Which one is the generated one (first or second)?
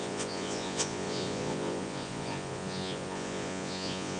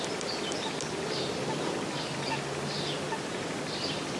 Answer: first